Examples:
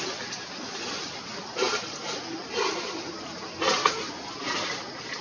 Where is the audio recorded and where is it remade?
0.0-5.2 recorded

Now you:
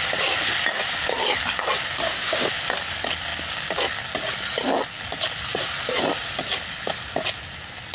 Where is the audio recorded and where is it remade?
0.0-2.0 recorded; 2.0-2.5 remade; 2.5-7.9 recorded

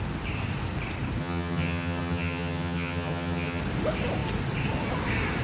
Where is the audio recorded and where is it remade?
0.0-1.2 recorded; 1.2-3.6 remade; 3.6-5.4 recorded

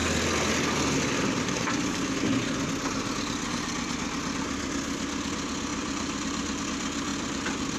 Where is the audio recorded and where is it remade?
0.0-5.7 recorded; 5.7-6.6 remade; 6.6-7.1 recorded; 7.1-7.8 remade

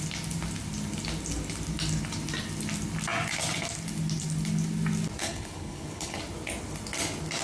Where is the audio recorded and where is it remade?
0.0-5.2 recorded; 5.2-6.2 remade; 6.2-7.4 recorded

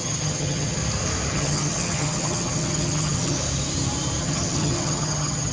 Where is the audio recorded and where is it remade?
0.0-0.8 remade; 0.8-1.3 recorded; 1.3-3.4 remade; 3.4-4.2 recorded; 4.2-5.5 remade